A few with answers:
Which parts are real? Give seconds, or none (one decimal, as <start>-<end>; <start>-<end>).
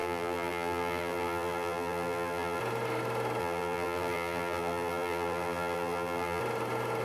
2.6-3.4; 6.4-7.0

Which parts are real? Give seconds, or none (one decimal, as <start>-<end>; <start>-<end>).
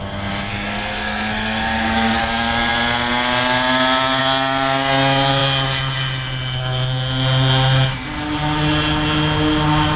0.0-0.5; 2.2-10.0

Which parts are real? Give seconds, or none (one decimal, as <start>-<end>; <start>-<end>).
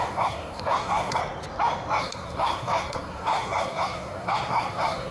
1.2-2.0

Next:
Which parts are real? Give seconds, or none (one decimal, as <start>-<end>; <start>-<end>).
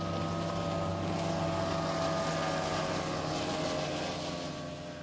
0.0-5.0